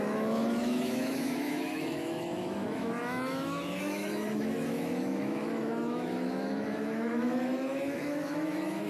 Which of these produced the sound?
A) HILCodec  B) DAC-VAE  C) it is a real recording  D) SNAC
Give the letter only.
B